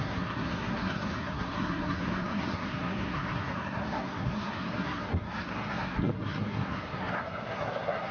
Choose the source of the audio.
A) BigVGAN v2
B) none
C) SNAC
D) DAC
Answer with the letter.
C